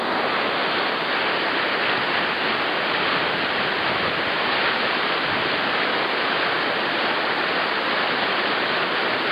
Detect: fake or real real